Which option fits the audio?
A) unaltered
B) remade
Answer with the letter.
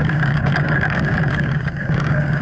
B